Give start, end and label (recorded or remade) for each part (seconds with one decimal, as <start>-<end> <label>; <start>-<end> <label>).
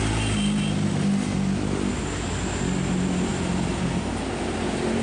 0.0-5.0 recorded